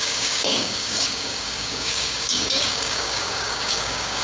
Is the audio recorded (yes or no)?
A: no